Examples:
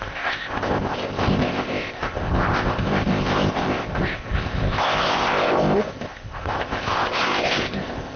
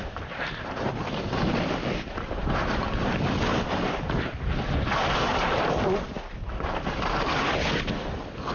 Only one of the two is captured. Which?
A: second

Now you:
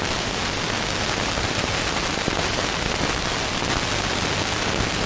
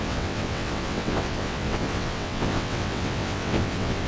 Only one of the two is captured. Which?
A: first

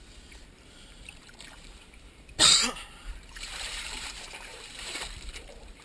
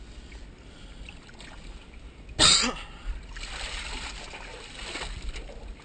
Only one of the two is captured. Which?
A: second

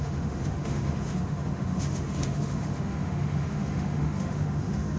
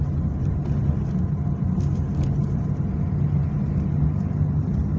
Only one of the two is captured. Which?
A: second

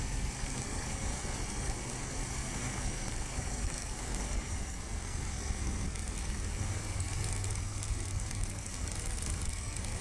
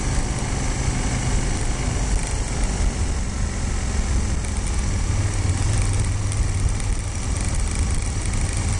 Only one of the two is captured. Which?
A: second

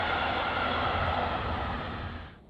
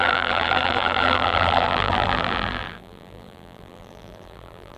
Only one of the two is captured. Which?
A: first